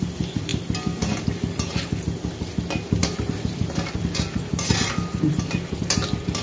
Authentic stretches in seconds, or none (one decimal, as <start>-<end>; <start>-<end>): 0.0-3.0; 4.4-6.4